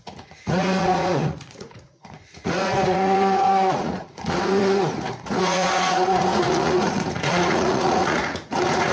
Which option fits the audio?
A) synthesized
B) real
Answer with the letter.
A